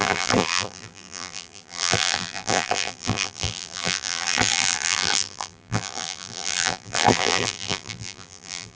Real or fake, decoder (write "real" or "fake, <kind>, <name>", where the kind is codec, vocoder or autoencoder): fake, vocoder, BigVGAN v2